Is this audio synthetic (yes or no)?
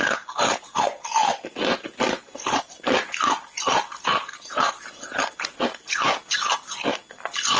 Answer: no